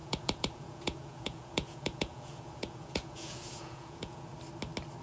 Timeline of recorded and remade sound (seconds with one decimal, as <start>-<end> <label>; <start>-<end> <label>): 0.0-4.3 remade; 4.3-5.0 recorded